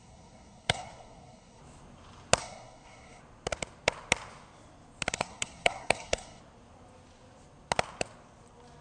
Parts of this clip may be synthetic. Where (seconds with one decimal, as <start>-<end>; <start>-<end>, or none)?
0.0-1.6; 2.4-3.2; 5.1-6.4